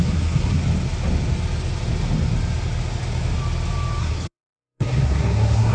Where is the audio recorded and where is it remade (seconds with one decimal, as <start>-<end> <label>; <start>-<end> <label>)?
0.0-0.6 remade; 0.6-4.0 recorded; 4.0-5.7 remade